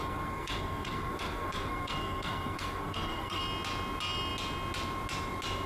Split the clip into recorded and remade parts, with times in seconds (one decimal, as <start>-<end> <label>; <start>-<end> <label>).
0.0-3.4 remade; 3.4-5.7 recorded